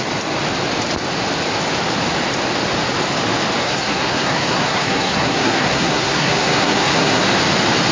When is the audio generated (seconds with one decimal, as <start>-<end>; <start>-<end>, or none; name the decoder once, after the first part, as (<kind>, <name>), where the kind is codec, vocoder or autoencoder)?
3.6-7.2 (codec, SNAC)